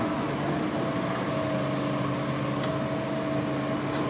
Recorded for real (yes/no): yes